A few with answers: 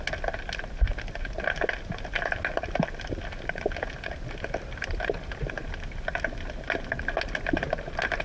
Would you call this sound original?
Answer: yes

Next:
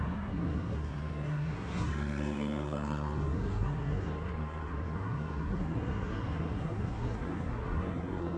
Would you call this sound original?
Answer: no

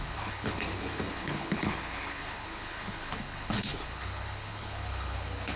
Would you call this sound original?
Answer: no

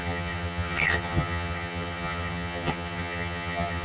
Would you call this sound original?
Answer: no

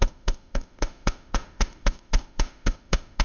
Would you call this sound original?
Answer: no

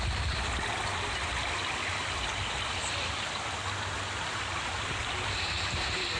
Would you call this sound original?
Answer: yes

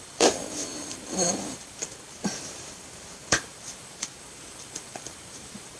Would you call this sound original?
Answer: no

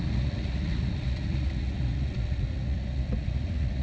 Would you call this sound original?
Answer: no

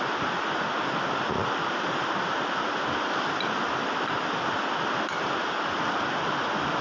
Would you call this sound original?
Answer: yes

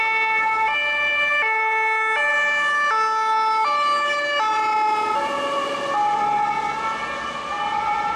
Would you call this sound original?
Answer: yes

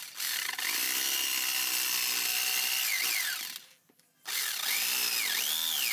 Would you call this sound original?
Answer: yes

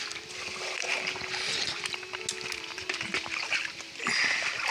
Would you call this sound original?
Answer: yes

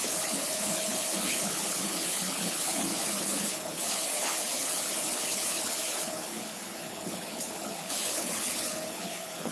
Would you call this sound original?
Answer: no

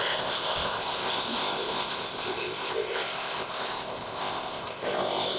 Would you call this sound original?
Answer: no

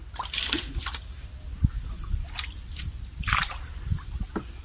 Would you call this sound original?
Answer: yes